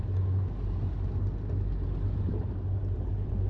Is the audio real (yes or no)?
yes